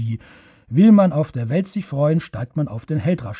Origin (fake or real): real